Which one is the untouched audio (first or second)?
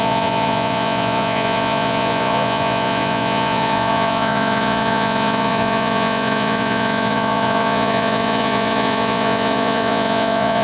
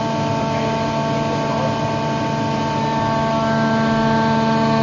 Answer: second